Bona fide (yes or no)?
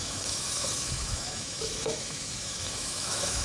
no